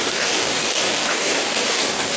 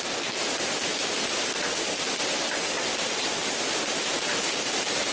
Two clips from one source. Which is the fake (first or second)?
first